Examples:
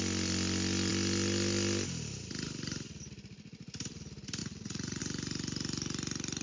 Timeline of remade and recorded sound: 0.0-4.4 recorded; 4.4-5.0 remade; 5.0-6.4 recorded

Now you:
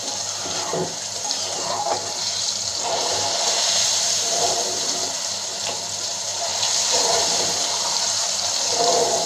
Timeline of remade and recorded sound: 0.0-9.3 remade

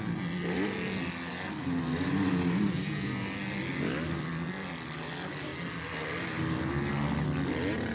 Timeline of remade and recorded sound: 0.0-7.9 recorded

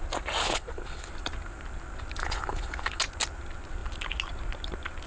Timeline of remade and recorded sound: 0.0-0.4 recorded; 0.4-1.1 remade; 1.1-2.2 recorded; 2.2-3.0 remade; 3.0-5.1 recorded